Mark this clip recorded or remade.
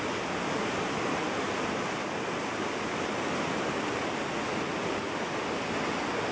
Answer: recorded